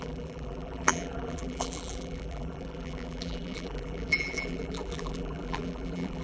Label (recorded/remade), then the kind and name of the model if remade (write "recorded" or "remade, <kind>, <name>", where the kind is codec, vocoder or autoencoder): remade, vocoder, BigVGAN v2